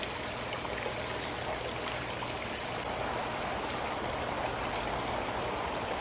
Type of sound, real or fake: real